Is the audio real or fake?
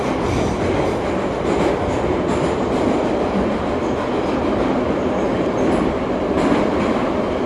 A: real